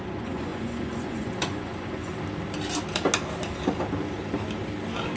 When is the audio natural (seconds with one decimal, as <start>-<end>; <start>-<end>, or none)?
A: 2.1-5.2